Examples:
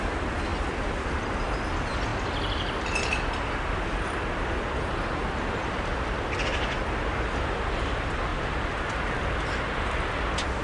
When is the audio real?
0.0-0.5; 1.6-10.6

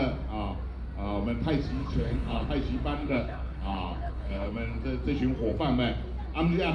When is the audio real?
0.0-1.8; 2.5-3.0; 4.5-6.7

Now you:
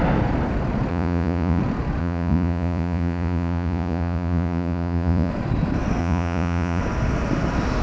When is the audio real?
0.0-0.9; 1.6-2.0; 5.3-6.0; 6.8-7.8

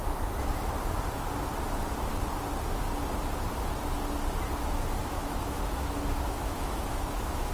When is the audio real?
0.0-5.0

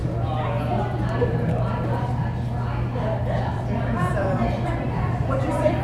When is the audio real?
0.0-3.5